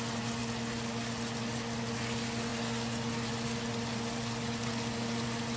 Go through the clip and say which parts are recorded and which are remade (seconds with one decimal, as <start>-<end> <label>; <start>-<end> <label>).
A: 0.0-5.6 recorded